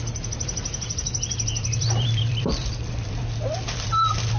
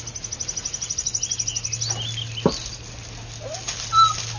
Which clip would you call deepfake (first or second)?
first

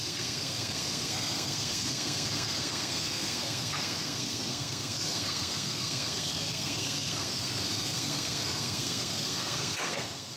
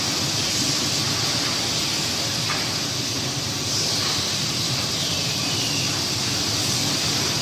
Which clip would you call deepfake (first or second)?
first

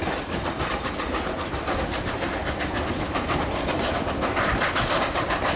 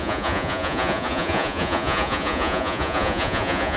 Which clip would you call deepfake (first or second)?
second